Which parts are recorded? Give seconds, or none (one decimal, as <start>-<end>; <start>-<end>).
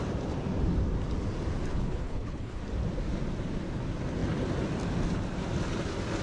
0.0-1.7; 2.6-6.2